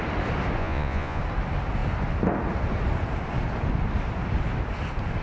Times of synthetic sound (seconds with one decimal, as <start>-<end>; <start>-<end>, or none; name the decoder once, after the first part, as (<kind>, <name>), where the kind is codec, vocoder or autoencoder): 0.6-1.2 (vocoder, Vocos)